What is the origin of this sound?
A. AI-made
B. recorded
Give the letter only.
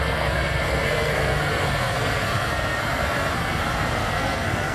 A